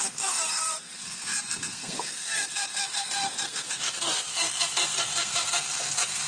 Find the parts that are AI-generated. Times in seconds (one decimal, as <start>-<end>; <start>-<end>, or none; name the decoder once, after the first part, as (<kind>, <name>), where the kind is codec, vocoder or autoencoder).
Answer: 0.0-6.3 (codec, SNAC)